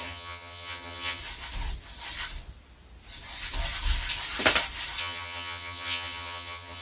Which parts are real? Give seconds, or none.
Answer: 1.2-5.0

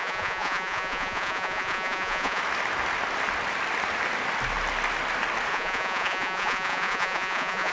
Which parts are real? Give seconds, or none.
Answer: 2.4-5.5

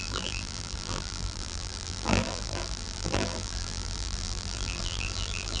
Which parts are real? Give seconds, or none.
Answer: none

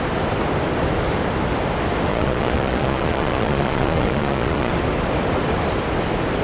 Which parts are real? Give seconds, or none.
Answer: 0.0-2.1; 4.7-6.4

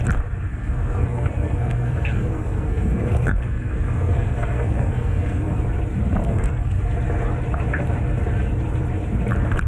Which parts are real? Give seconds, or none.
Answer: 0.0-0.5; 5.6-6.2; 6.8-9.7

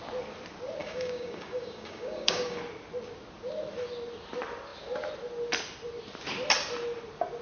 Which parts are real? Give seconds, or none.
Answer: 0.0-0.8; 2.6-7.4